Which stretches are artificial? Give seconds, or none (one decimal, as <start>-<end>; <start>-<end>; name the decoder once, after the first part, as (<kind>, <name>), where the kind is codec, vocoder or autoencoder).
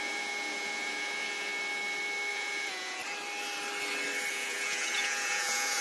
0.0-1.5 (vocoder, Vocos); 2.3-3.0; 4.3-5.8